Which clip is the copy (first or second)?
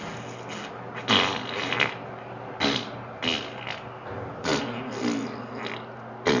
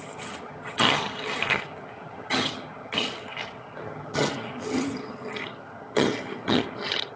second